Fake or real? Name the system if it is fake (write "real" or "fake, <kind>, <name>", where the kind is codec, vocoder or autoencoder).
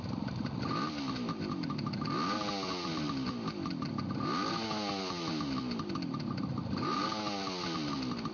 real